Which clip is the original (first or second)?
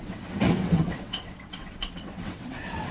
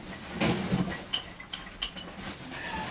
second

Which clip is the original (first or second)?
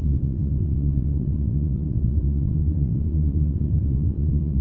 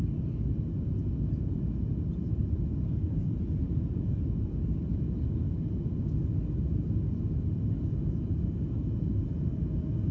second